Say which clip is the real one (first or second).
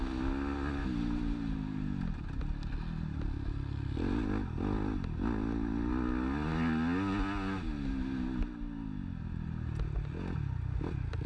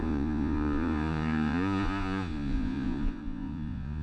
first